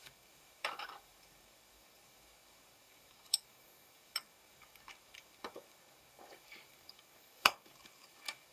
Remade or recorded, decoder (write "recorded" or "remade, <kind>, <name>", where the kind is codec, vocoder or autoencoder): remade, codec, DAC